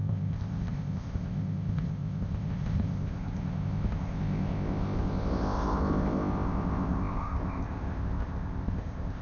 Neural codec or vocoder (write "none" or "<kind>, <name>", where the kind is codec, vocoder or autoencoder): codec, ZipCodec